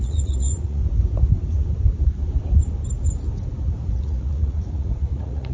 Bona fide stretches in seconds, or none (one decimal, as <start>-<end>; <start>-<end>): 0.8-3.9